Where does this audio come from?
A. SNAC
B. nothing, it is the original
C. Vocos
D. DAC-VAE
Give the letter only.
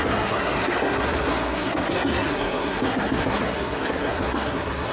A